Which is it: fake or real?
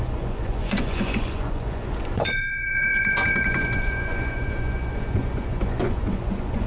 fake